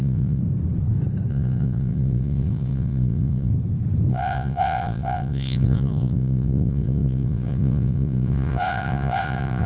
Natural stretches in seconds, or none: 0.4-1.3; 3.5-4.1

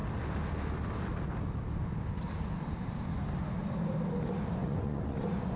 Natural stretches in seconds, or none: 0.0-4.6

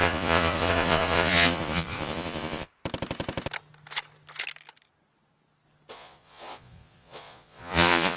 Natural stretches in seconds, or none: 2.7-5.9